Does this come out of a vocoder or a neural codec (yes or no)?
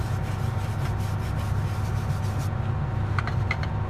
no